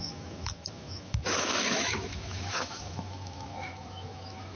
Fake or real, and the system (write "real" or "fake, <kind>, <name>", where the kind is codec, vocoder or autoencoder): fake, autoencoder, DAC-VAE